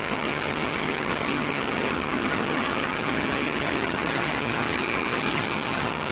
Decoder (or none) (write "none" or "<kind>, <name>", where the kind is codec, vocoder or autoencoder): vocoder, HiFi-GAN